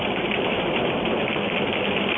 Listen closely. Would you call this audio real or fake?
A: real